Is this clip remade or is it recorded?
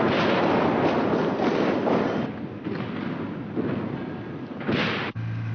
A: recorded